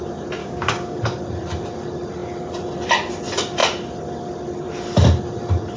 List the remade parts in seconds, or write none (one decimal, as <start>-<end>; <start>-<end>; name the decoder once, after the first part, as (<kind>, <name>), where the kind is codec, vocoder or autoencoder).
0.4-1.0 (codec, DAC)